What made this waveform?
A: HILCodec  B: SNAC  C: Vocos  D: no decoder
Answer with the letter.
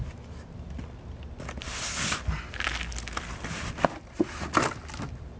D